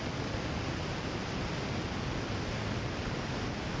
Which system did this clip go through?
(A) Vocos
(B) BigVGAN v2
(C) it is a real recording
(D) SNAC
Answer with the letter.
C